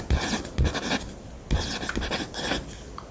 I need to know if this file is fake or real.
real